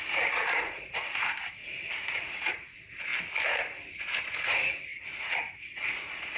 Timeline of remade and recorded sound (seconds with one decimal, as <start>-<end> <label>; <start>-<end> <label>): 0.0-3.1 remade; 3.1-4.2 recorded; 4.2-6.4 remade